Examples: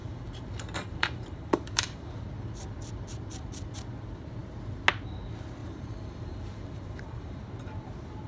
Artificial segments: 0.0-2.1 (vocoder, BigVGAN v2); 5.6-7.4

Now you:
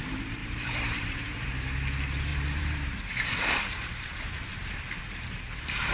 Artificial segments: 0.4-1.5 (vocoder, BigVGAN v2); 2.3-5.9

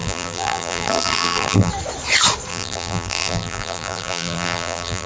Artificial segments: 0.0-1.7 (vocoder, BigVGAN v2); 2.5-5.1

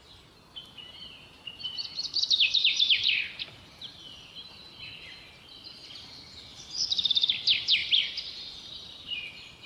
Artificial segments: 0.6-3.2 (vocoder, BigVGAN v2)

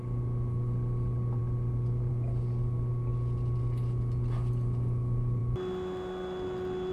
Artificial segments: none

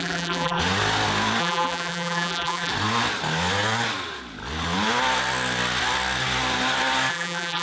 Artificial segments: 0.0-0.6 (vocoder, BigVGAN v2); 1.4-2.7; 7.1-7.6

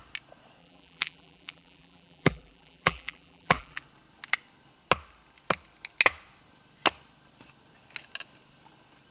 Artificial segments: 0.6-3.8 (vocoder, BigVGAN v2)

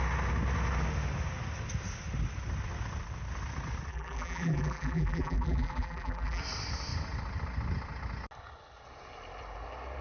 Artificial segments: 3.9-6.4 (vocoder, BigVGAN v2)